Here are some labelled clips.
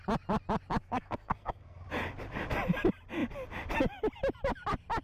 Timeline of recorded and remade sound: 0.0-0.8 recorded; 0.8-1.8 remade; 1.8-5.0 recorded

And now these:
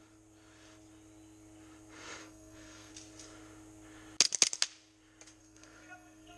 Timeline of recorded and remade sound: 0.0-2.2 recorded; 2.2-2.9 remade; 2.9-5.4 recorded; 5.4-6.4 remade